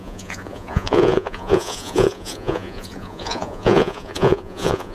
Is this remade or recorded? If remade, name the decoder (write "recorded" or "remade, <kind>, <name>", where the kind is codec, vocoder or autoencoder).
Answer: remade, vocoder, Vocos